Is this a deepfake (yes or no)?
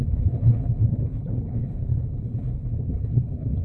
yes